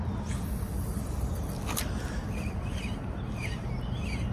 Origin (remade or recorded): recorded